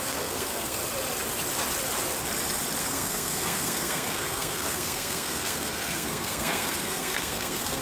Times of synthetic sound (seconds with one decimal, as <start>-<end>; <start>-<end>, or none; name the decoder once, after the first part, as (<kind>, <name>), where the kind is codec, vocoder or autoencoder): 0.0-0.8 (codec, SNAC); 2.8-7.8